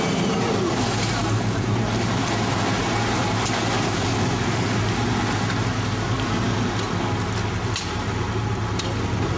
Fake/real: real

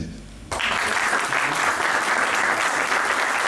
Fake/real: real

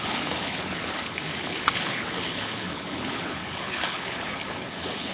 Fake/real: fake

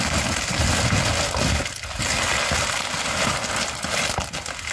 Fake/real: real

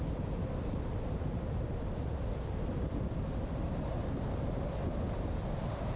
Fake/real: real